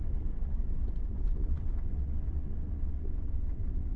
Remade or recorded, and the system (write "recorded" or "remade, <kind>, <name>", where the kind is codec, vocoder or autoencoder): remade, vocoder, WaveNeXt